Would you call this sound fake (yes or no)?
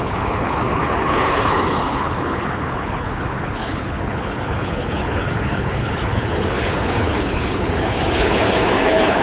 yes